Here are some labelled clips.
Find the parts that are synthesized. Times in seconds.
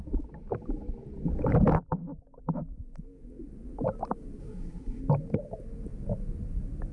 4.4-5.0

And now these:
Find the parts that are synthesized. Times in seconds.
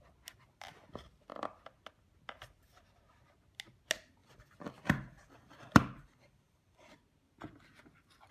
4.2-6.9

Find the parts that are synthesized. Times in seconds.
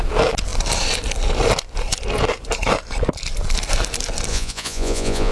4.3-5.3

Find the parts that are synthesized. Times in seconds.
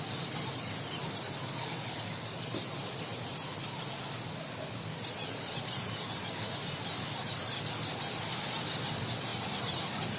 none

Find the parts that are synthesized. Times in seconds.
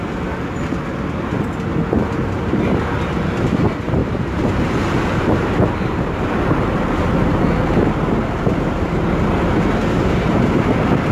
4.0-7.4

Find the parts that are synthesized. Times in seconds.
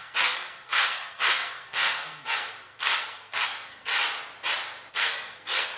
0.0-3.9; 4.9-5.8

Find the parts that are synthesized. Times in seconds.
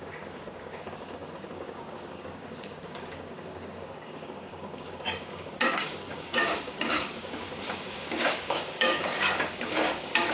0.0-10.3